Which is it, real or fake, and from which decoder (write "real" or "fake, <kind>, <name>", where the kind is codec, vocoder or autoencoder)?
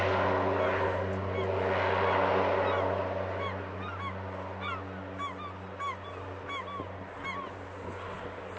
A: real